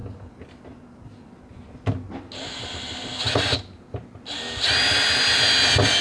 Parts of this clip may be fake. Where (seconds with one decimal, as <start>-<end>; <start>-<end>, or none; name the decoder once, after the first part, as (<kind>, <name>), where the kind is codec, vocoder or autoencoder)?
none